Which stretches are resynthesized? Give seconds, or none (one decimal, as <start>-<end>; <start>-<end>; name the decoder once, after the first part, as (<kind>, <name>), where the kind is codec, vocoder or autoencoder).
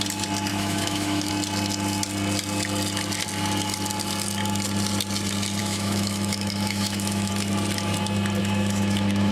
0.5-1.3 (autoencoder, DAC-VAE); 5.6-7.3; 8.4-9.3